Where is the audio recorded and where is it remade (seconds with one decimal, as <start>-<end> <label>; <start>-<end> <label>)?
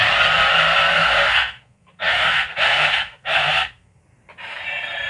0.0-0.9 recorded; 0.9-4.0 remade; 4.0-5.1 recorded